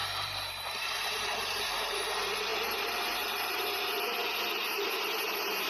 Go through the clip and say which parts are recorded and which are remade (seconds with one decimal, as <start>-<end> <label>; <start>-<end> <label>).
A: 0.0-1.7 remade; 1.7-2.5 recorded; 2.5-3.9 remade; 3.9-4.6 recorded; 4.6-5.7 remade